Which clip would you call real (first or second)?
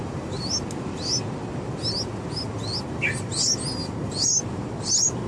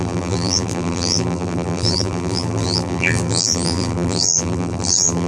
first